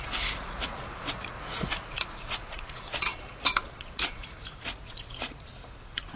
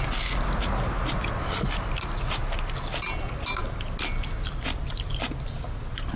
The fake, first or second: first